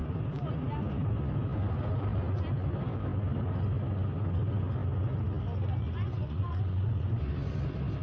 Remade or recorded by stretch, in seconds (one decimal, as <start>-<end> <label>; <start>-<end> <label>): 0.0-5.8 recorded; 5.8-7.2 remade; 7.2-8.0 recorded